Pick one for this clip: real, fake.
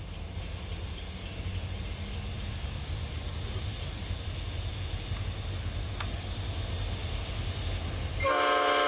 real